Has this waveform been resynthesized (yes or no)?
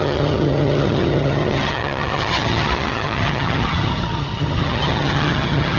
yes